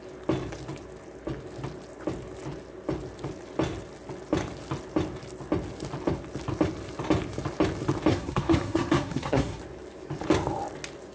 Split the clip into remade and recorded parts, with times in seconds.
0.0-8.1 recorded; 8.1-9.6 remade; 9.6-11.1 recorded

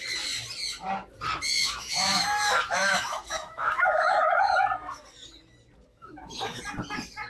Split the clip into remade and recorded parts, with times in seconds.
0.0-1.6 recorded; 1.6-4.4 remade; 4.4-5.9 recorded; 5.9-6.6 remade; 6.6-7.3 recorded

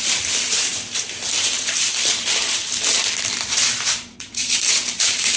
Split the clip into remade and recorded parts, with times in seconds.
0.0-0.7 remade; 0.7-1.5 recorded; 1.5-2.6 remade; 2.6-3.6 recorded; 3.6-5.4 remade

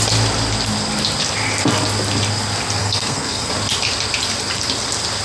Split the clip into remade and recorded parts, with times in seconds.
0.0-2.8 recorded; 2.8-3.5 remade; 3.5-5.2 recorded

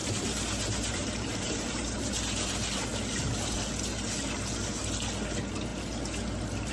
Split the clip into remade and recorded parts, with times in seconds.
0.0-2.2 remade; 2.2-6.7 recorded

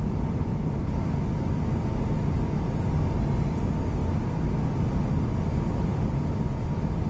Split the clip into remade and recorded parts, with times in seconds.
0.0-7.1 recorded